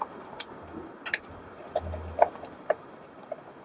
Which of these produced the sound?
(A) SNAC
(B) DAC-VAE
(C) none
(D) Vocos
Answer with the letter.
C